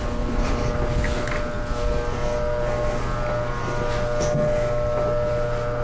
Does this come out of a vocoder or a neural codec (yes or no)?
no